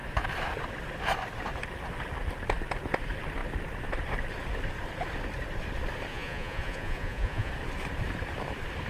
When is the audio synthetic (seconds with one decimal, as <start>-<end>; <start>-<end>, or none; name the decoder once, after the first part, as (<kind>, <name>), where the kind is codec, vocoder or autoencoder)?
6.1-7.5 (vocoder, Vocos)